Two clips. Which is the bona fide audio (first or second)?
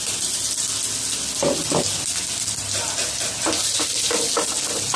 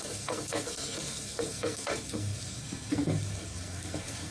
first